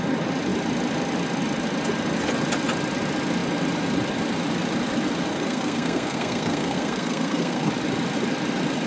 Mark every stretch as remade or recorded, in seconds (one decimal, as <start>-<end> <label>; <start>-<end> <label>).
0.0-5.3 recorded; 5.3-7.7 remade; 7.7-8.9 recorded